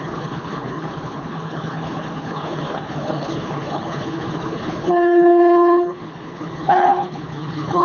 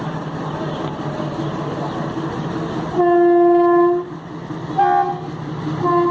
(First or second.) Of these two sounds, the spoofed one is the first